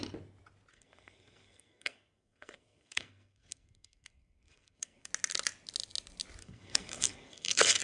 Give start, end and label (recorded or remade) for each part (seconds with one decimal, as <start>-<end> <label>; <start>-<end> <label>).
0.0-0.7 recorded; 0.7-5.1 remade; 5.1-6.4 recorded; 6.4-7.8 remade

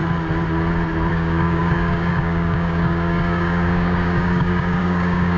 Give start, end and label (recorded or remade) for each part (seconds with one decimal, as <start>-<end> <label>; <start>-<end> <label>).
0.0-1.1 recorded; 1.1-5.4 remade